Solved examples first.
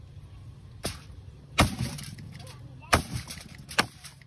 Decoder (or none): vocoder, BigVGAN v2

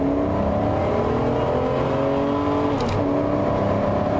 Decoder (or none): none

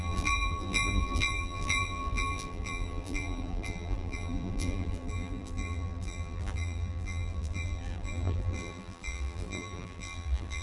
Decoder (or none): vocoder, BigVGAN v2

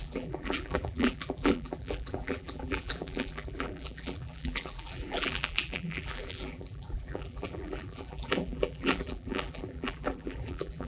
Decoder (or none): vocoder, BigVGAN v2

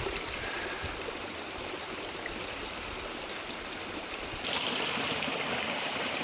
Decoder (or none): vocoder, BigVGAN v2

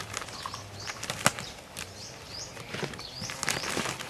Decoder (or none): vocoder, BigVGAN v2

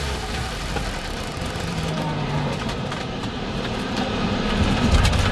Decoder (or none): vocoder, BigVGAN v2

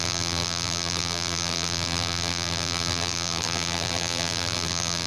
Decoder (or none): vocoder, BigVGAN v2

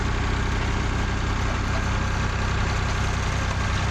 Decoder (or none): none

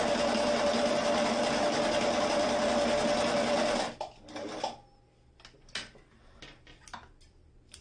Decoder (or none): none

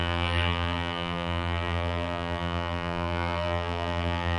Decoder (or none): vocoder, BigVGAN v2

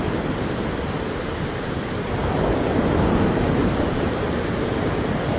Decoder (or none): vocoder, BigVGAN v2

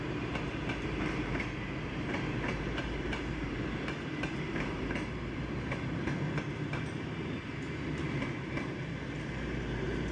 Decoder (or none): vocoder, BigVGAN v2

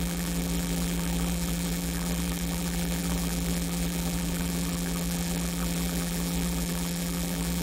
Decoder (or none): vocoder, BigVGAN v2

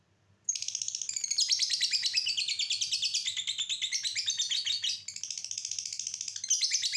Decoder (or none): none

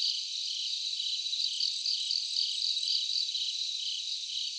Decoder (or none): vocoder, BigVGAN v2